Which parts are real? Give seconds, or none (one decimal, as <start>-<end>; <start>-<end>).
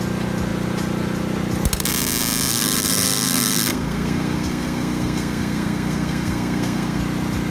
0.0-2.5; 7.0-7.5